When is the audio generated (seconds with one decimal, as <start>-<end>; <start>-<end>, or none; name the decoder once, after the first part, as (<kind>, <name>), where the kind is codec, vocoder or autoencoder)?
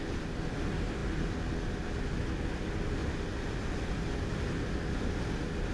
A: none